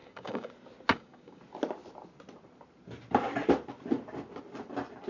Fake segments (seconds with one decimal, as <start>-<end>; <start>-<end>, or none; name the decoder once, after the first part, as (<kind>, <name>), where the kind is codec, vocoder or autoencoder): 0.0-0.5 (codec, DAC); 0.9-1.4